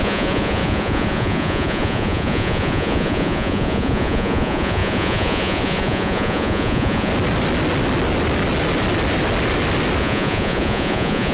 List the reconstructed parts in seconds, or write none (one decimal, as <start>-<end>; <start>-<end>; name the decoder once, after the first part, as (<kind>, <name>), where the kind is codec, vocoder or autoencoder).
0.0-7.1 (vocoder, Vocos); 10.0-11.3